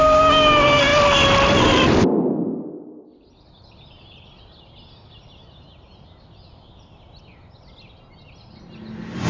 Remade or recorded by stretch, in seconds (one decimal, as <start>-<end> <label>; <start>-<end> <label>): 0.0-9.3 recorded